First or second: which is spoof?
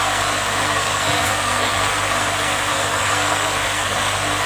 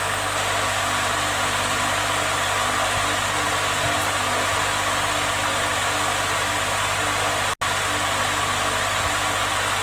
first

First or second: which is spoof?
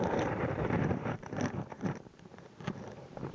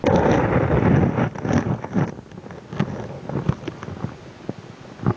first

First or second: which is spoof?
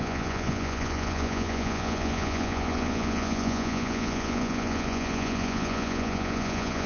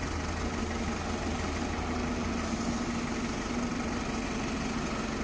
first